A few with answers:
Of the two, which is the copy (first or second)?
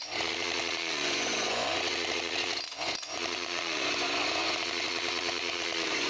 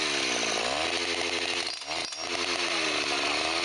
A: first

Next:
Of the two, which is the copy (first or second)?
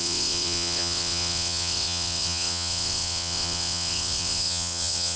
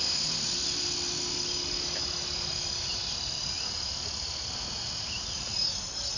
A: first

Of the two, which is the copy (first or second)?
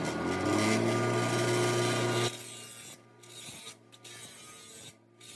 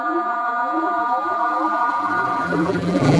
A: second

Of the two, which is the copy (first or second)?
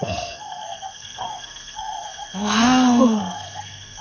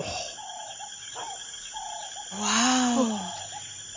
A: first